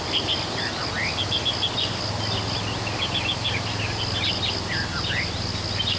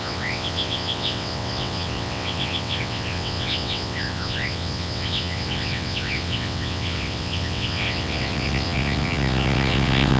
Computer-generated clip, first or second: second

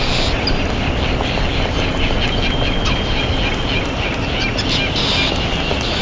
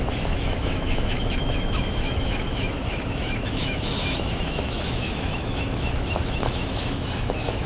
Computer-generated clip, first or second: second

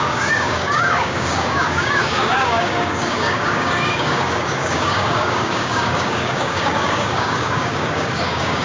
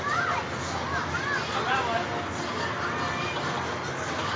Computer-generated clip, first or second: first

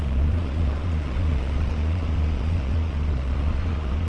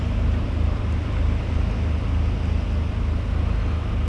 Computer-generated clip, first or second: first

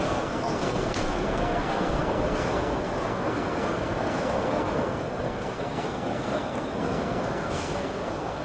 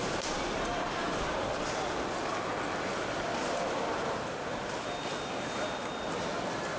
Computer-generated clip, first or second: first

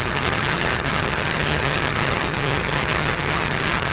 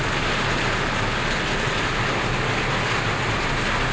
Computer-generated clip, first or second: first